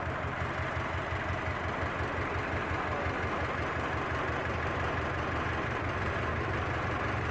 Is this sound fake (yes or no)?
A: no